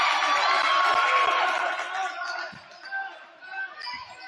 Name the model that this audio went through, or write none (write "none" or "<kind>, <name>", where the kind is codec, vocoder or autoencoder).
none